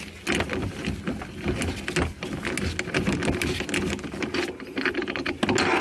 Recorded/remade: recorded